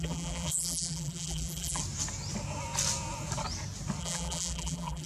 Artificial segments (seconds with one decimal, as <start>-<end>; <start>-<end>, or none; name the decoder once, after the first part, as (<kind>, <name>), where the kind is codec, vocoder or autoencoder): 0.0-1.8 (vocoder, BigVGAN v2); 4.0-5.1